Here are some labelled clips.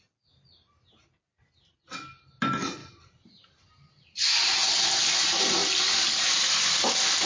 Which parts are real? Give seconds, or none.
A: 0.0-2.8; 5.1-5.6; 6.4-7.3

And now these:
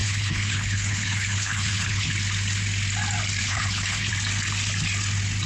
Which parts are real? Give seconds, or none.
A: 2.1-3.4; 4.1-5.5

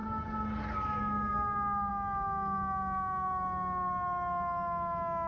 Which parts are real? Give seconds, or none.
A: 0.0-5.3

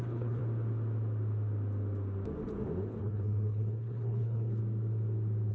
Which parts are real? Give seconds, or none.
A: 0.4-3.0; 4.6-5.5

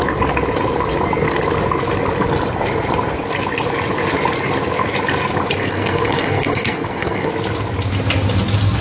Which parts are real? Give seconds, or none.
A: 0.0-5.6; 7.3-8.8

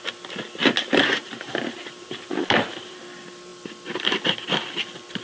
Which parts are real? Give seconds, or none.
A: 0.0-0.6; 3.0-5.2

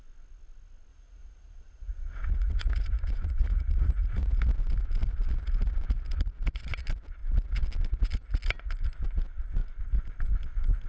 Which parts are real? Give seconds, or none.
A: 0.0-0.9; 4.4-10.9